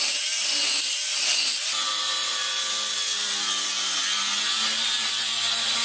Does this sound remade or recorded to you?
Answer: remade